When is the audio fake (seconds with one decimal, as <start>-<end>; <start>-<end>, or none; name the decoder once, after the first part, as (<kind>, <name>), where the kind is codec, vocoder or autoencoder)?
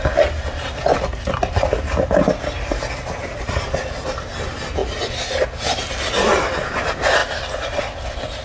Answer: none